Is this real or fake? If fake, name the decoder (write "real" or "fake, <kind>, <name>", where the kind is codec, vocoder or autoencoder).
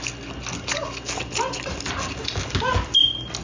real